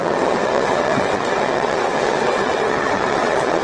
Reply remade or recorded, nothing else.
remade